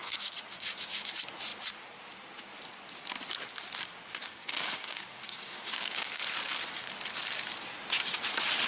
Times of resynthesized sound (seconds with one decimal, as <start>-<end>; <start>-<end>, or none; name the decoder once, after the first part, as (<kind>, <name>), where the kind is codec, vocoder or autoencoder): 0.0-1.1 (codec, DAC); 4.2-6.2